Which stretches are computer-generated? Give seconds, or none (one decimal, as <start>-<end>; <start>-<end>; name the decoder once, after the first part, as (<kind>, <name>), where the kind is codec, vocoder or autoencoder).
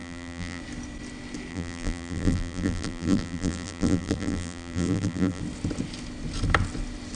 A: 0.0-0.6 (vocoder, BigVGAN v2); 1.5-5.4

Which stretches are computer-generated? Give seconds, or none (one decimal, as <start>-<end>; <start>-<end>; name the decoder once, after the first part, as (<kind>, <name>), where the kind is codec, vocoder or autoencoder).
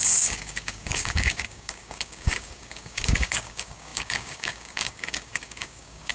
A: 0.0-6.1 (codec, DAC)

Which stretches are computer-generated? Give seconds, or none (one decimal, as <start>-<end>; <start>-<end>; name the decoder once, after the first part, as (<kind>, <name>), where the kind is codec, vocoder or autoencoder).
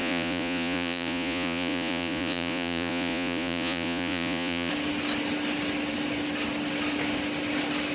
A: 0.0-4.7 (vocoder, Vocos)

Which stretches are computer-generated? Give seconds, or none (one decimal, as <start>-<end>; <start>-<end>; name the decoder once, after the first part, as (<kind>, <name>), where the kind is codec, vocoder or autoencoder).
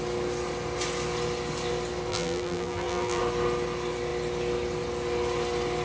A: 2.1-3.2 (vocoder, BigVGAN v2)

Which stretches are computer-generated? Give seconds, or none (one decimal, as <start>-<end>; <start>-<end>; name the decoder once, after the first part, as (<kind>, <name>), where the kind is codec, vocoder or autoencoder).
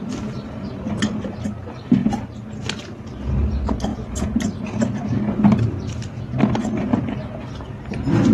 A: 3.9-4.4 (vocoder, Vocos)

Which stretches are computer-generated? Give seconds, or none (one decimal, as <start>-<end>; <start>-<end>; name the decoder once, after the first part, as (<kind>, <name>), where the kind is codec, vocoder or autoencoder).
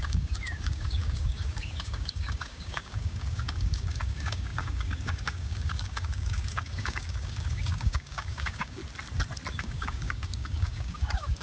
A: 0.0-8.8 (codec, DAC); 9.5-11.4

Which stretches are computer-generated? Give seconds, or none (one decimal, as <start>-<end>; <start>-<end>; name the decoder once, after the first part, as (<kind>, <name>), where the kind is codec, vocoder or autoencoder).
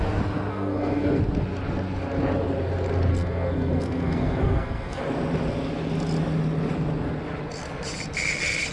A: 0.5-1.2 (codec, SNAC); 3.1-5.0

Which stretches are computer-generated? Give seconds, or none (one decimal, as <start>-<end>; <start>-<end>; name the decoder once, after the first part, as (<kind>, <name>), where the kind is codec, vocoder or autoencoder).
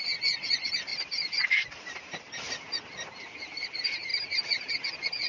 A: 0.9-2.5 (vocoder, BigVGAN v2); 4.1-4.7